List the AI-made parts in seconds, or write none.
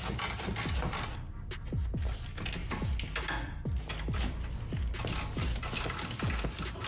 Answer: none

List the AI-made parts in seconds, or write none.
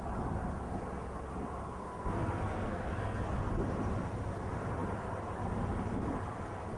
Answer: 1.8-3.5 (codec, SNAC)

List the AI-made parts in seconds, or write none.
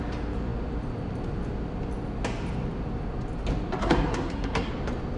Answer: 3.8-4.7 (codec, SNAC)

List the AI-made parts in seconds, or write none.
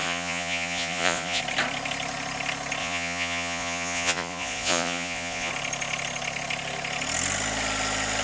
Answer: 0.0-1.4 (vocoder, Vocos); 2.8-5.5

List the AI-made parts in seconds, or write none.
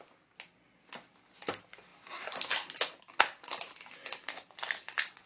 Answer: none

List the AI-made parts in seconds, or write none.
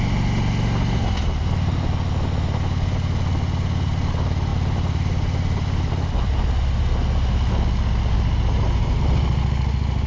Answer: none